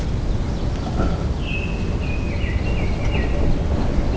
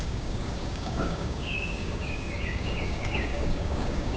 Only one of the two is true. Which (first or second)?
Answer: first